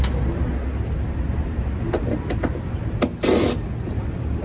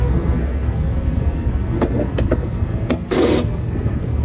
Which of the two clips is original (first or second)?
first